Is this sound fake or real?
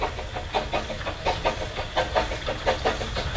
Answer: real